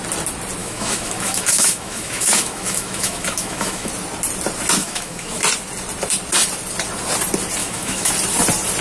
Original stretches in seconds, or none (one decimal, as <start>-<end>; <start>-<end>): 0.0-0.6; 3.9-4.8; 5.4-7.6; 8.1-8.8